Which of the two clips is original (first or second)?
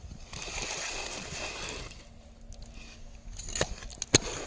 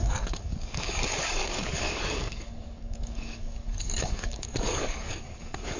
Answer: first